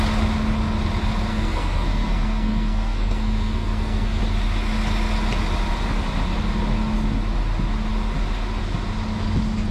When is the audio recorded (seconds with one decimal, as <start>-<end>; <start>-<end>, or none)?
0.0-1.3; 4.2-9.7